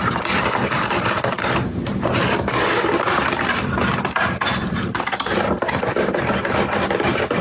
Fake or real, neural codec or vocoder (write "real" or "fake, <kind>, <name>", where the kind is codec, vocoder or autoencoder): fake, vocoder, BigVGAN v2